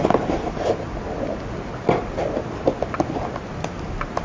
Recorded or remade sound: recorded